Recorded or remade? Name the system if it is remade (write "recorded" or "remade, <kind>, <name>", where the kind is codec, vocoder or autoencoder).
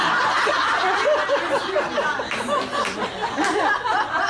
recorded